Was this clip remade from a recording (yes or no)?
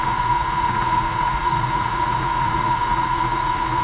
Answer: yes